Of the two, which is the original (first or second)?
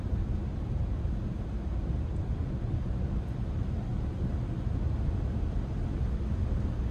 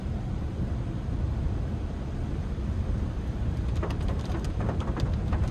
first